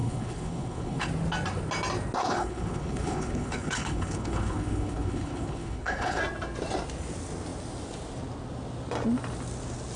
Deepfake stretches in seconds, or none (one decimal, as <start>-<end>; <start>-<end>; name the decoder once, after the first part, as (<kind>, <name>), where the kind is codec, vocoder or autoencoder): 0.0-1.1 (codec, HILCodec); 2.2-6.2